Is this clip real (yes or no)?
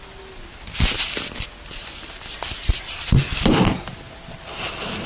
yes